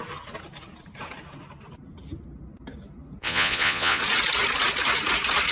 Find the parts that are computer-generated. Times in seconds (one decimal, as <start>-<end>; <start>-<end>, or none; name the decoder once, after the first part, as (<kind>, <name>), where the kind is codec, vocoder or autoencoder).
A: 3.2-4.0 (vocoder, Vocos)